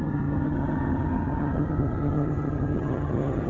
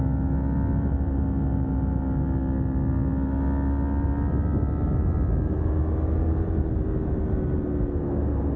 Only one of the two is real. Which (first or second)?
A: second